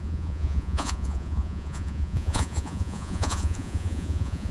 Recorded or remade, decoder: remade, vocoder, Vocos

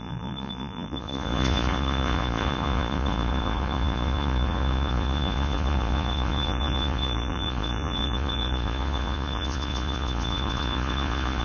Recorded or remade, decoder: remade, vocoder, Vocos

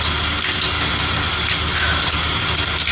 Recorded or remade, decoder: recorded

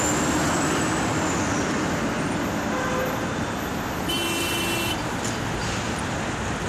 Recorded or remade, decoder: recorded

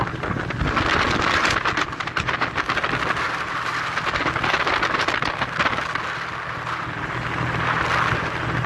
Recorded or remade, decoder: recorded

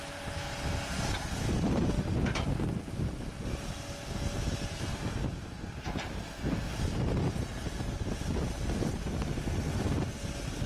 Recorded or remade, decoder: recorded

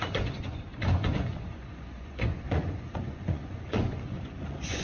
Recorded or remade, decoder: remade, vocoder, Vocos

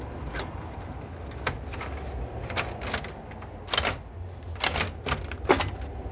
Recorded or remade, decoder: recorded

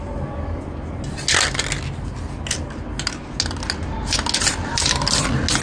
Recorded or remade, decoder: recorded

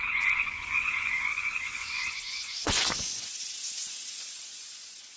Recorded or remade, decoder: remade, vocoder, Vocos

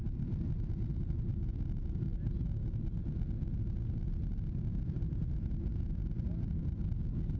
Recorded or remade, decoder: recorded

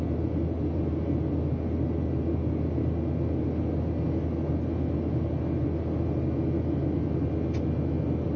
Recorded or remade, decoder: recorded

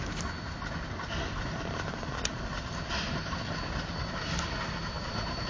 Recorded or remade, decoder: recorded